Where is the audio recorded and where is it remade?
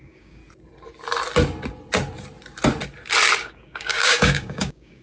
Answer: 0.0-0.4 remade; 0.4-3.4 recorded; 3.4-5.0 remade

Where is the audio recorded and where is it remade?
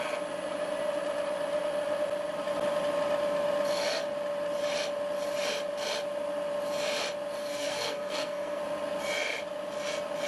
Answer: 0.0-7.4 recorded; 7.4-8.6 remade; 8.6-10.3 recorded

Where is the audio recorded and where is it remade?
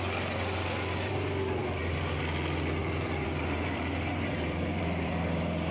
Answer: 0.0-1.6 recorded; 1.6-2.2 remade; 2.2-2.8 recorded; 2.8-5.1 remade; 5.1-5.7 recorded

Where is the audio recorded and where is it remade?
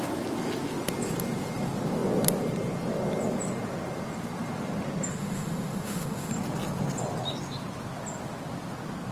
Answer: 0.0-5.1 recorded; 5.1-6.3 remade; 6.3-9.1 recorded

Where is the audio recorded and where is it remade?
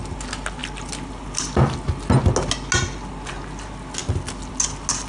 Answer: 0.0-5.1 recorded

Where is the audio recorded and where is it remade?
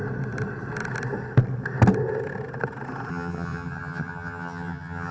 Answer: 0.0-3.1 recorded; 3.1-5.1 remade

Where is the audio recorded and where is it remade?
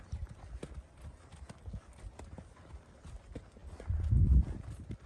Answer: 0.0-5.1 recorded